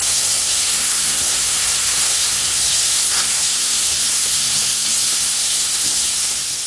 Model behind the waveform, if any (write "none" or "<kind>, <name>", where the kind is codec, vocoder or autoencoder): codec, SNAC